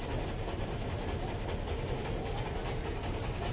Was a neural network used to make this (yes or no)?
no